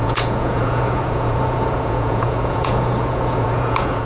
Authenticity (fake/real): fake